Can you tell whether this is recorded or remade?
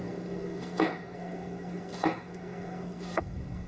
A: remade